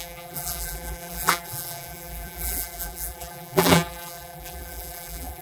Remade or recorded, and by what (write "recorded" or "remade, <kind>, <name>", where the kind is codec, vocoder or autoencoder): remade, vocoder, BigVGAN v2